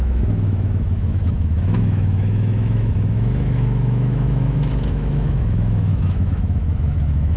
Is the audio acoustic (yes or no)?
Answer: no